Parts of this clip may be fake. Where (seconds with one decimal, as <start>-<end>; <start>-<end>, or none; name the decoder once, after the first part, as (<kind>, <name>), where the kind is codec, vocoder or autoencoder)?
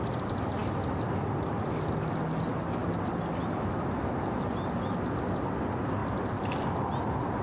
none